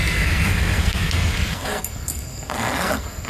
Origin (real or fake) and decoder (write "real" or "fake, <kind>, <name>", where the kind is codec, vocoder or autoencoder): fake, codec, SNAC